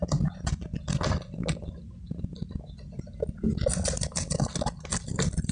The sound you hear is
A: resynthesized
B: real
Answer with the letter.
B